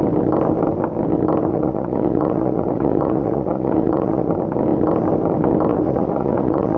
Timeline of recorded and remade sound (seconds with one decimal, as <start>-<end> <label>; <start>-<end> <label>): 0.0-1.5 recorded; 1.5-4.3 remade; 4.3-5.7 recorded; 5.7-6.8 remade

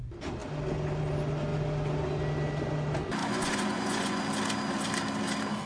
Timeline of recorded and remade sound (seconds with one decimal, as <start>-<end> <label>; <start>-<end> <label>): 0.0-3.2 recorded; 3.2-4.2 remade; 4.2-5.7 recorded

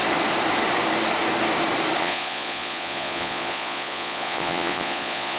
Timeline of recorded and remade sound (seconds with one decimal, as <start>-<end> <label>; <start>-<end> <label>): 0.0-2.0 recorded; 2.0-5.4 remade

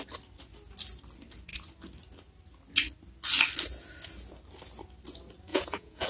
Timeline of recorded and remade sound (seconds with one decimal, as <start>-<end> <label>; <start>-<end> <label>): 0.0-5.5 recorded; 5.5-6.1 remade

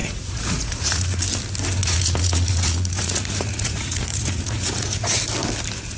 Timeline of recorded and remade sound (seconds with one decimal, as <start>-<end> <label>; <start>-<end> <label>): 0.0-1.2 remade; 1.2-1.8 recorded; 1.8-5.2 remade; 5.2-6.0 recorded

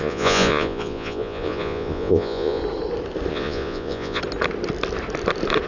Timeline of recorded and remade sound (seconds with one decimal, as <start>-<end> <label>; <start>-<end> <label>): 0.0-2.6 remade; 2.6-3.3 recorded; 3.3-4.2 remade; 4.2-5.7 recorded